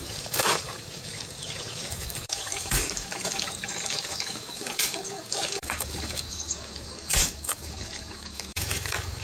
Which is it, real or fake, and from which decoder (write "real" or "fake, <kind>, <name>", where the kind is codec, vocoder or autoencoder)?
fake, codec, DAC